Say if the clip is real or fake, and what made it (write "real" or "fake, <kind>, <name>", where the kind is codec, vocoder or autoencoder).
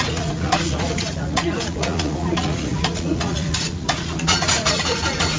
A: fake, vocoder, Vocos